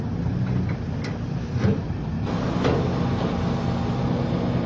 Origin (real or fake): real